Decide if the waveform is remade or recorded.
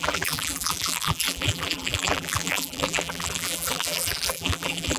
remade